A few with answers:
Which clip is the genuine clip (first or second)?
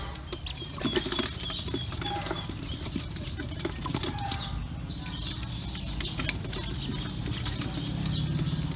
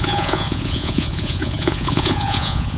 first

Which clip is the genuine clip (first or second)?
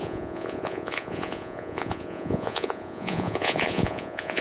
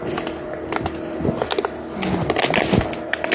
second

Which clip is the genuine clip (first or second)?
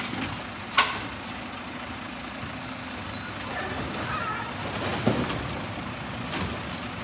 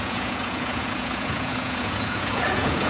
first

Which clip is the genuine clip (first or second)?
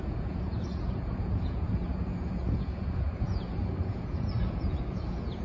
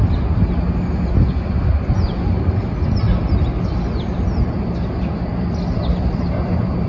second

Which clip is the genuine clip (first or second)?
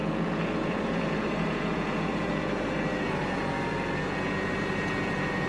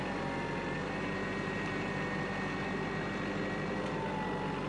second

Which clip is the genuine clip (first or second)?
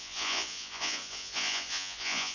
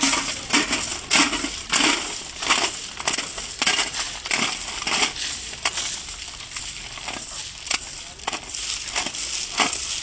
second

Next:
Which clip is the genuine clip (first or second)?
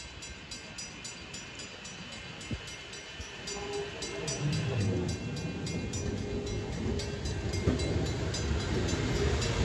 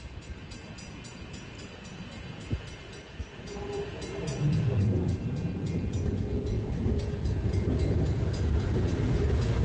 first